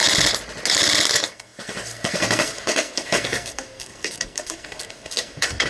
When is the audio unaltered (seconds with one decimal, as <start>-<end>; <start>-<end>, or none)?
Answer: 0.0-1.1